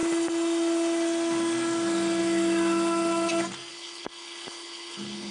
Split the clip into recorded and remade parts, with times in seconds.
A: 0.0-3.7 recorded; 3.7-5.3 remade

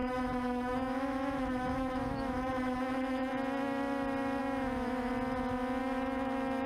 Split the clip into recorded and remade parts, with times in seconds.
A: 0.0-3.3 remade; 3.3-4.4 recorded; 4.4-5.1 remade; 5.1-5.8 recorded; 5.8-6.7 remade

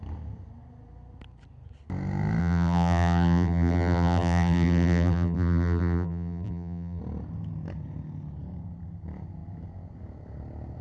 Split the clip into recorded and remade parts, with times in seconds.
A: 0.0-2.4 recorded; 2.4-7.0 remade; 7.0-10.8 recorded